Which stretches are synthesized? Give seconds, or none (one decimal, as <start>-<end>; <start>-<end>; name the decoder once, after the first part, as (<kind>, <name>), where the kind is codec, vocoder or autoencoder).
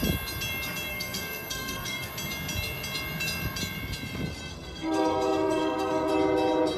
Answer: 0.9-2.1 (codec, SNAC); 4.5-6.1